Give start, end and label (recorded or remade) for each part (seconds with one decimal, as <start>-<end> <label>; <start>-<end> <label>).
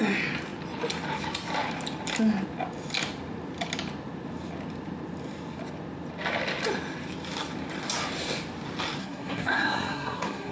0.0-9.0 recorded; 9.0-10.5 remade